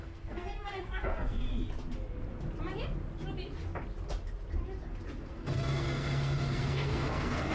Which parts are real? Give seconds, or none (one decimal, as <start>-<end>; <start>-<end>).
1.5-5.2